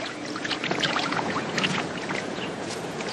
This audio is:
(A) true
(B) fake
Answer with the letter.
B